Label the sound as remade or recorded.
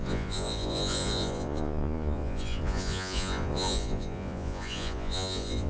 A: remade